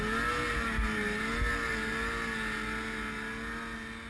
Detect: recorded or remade recorded